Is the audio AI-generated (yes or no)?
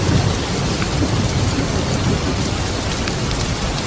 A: no